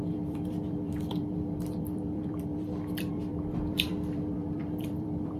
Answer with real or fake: fake